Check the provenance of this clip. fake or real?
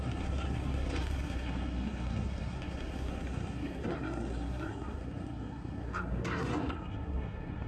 fake